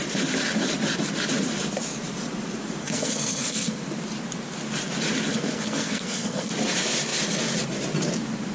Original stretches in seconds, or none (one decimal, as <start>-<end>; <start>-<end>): 0.0-2.8; 3.8-5.3; 6.5-8.5